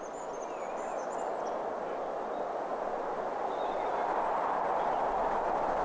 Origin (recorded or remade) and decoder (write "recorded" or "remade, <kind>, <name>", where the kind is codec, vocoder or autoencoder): recorded